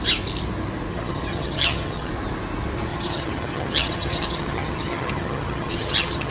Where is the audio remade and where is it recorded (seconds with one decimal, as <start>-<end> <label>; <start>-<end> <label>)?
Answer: 0.0-0.9 recorded; 0.9-2.1 remade; 2.1-2.9 recorded; 2.9-6.3 remade